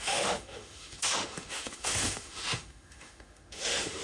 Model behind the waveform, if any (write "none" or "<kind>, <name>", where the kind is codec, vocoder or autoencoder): autoencoder, DAC-VAE